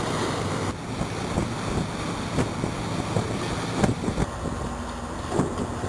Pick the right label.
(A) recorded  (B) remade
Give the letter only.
A